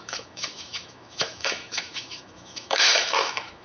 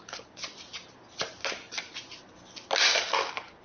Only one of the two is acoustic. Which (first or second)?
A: second